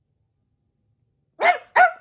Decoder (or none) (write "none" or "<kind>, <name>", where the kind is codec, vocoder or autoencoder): none